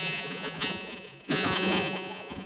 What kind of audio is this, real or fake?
fake